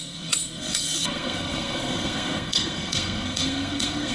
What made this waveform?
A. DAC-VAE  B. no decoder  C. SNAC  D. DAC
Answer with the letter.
C